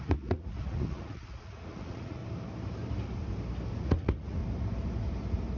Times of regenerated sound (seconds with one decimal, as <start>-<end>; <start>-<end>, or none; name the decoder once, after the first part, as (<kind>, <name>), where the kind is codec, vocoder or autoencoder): 0.0-2.2 (vocoder, Vocos); 3.8-4.4